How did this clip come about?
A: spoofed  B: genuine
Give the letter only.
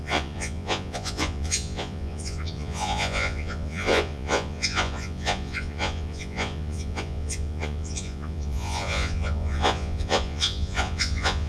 A